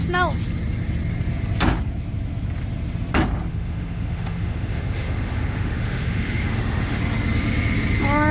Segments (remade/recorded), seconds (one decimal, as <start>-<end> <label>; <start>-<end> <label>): 0.0-3.5 recorded; 3.5-7.0 remade; 7.0-8.3 recorded